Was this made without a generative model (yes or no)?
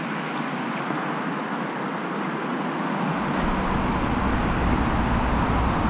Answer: yes